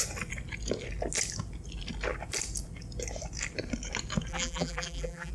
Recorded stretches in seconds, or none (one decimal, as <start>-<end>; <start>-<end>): 0.0-4.3